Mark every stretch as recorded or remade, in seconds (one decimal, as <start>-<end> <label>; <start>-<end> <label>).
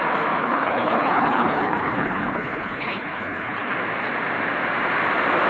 0.0-0.4 recorded; 0.4-3.7 remade; 3.7-5.5 recorded